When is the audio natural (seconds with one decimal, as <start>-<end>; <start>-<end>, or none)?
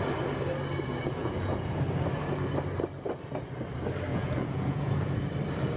0.0-1.2; 1.7-4.1; 4.9-5.8